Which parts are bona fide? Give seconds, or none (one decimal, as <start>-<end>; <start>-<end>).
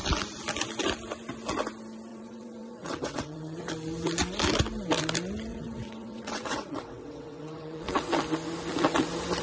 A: 0.0-2.1; 3.7-5.5; 8.1-9.4